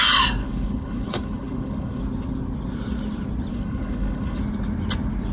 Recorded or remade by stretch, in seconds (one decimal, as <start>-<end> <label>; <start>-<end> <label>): 0.0-0.4 recorded; 0.4-2.0 remade; 2.0-3.5 recorded; 3.5-4.4 remade; 4.4-5.3 recorded